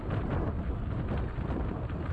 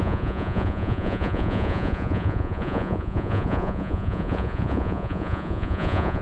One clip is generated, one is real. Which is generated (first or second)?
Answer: second